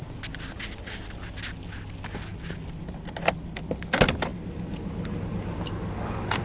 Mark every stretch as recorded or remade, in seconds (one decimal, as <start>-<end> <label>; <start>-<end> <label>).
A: 0.0-6.4 recorded

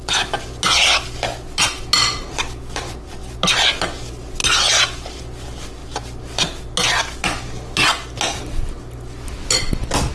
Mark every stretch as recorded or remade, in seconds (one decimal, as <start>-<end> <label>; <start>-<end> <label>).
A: 0.0-10.1 recorded